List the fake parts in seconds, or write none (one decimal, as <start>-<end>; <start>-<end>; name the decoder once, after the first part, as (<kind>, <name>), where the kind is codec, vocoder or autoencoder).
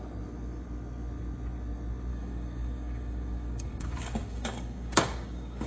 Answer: 2.1-5.7 (codec, DAC)